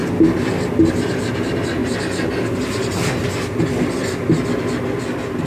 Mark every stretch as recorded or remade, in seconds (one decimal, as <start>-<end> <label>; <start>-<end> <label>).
0.0-5.5 recorded